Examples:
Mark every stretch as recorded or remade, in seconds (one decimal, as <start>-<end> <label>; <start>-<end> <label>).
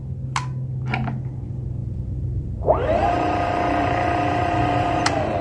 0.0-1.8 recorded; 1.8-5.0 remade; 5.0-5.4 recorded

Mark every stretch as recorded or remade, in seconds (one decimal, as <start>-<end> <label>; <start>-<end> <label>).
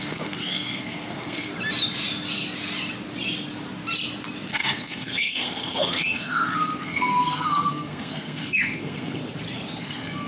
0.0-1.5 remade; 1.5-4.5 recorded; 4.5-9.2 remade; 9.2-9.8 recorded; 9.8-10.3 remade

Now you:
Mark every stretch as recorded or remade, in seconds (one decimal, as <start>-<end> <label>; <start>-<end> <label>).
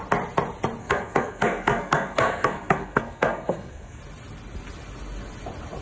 0.0-0.8 recorded; 0.8-4.0 remade; 4.0-5.8 recorded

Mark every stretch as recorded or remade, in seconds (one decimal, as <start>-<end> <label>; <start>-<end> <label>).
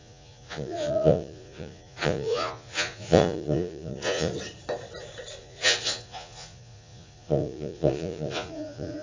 0.0-4.3 remade; 4.3-5.4 recorded; 5.4-9.0 remade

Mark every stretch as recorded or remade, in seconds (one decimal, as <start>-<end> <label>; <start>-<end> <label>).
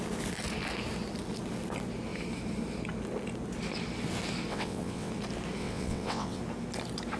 0.0-4.5 recorded; 4.5-5.1 remade; 5.1-5.6 recorded; 5.6-6.4 remade; 6.4-7.2 recorded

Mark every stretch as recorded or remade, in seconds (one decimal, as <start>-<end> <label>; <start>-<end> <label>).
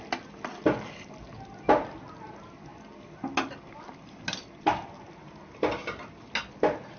0.0-7.0 recorded